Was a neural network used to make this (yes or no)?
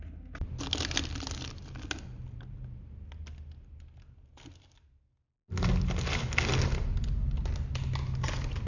no